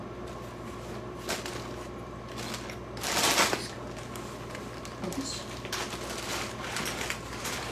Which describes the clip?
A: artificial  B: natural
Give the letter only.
B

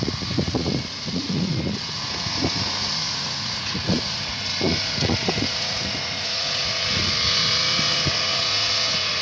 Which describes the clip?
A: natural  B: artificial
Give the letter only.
B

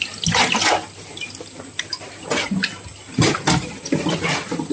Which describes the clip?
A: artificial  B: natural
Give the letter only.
B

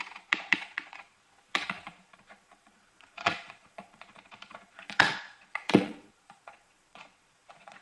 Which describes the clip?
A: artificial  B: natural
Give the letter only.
A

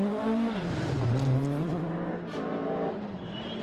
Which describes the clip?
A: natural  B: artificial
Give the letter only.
B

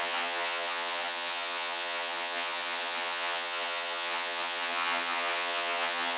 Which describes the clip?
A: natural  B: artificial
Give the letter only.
B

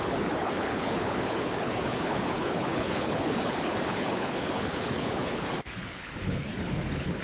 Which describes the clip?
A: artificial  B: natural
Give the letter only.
A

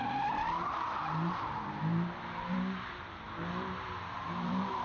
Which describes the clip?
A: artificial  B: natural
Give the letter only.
A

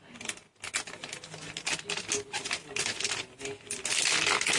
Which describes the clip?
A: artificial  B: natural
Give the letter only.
B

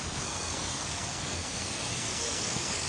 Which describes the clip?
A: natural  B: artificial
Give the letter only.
B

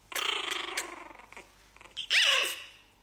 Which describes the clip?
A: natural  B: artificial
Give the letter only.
A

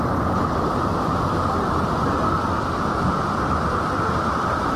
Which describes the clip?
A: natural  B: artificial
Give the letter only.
A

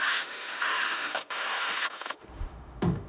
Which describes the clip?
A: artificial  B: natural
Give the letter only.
A